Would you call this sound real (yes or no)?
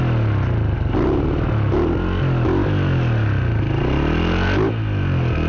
yes